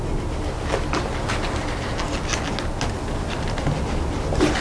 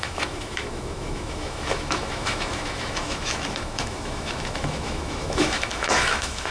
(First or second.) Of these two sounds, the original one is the first